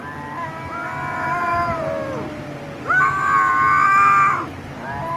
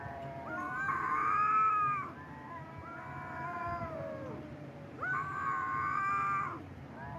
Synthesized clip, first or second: second